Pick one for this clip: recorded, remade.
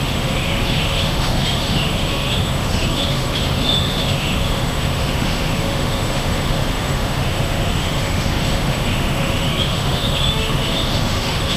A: remade